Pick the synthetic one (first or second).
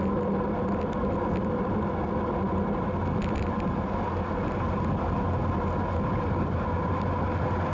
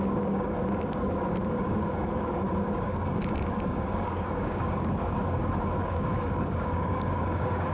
second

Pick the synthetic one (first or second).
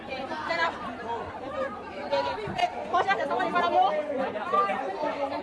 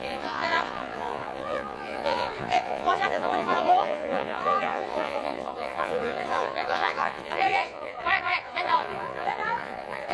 second